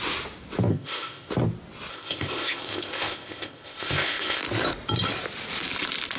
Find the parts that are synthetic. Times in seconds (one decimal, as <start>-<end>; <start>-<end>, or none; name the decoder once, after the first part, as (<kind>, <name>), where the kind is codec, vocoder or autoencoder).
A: 0.7-1.3 (codec, ZipCodec); 1.9-4.4